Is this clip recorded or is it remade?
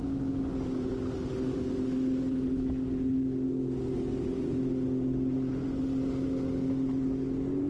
recorded